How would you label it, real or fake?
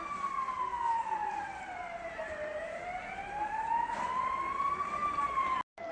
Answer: real